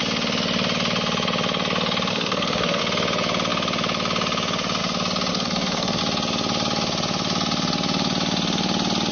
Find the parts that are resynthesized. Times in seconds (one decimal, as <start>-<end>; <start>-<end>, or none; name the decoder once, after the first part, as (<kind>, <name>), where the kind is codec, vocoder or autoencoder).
2.1-2.8 (codec, SNAC); 5.3-6.0

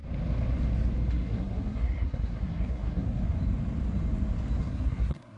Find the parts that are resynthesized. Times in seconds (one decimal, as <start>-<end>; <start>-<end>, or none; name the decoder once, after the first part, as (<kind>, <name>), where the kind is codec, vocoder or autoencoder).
1.1-3.2 (codec, SNAC); 4.6-5.4

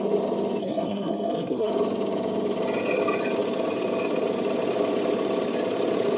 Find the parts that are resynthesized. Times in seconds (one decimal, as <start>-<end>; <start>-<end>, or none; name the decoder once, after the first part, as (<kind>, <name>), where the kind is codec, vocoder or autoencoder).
0.6-1.7 (codec, SNAC)